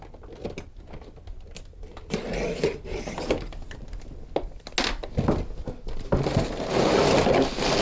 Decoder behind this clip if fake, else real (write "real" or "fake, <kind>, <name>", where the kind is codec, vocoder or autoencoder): real